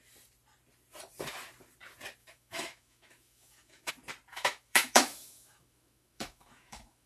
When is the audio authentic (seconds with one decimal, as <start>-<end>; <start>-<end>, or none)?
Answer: 0.0-2.2; 3.9-4.3

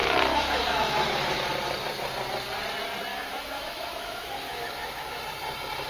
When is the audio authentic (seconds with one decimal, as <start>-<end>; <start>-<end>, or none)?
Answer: 1.4-3.1; 5.2-5.9

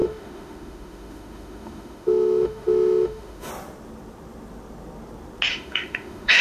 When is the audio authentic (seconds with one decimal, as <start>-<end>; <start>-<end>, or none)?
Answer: 3.5-5.5

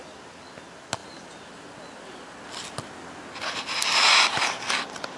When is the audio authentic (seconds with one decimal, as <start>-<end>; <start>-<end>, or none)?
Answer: 0.0-5.2

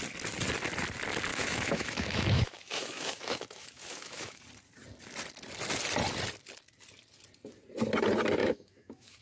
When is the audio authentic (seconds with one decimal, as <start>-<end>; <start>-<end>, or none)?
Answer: 0.0-1.3; 4.4-8.4

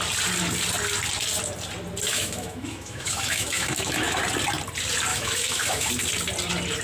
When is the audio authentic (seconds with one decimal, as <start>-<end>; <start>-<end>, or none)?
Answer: 0.0-2.1; 4.2-5.1; 5.9-6.8

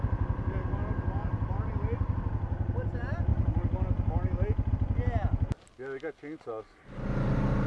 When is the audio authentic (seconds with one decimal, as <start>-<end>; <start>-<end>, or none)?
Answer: 0.0-7.7